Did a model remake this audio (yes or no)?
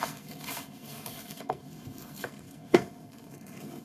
yes